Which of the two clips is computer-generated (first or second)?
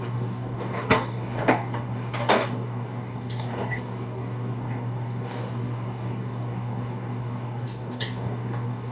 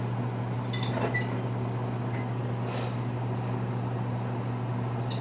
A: first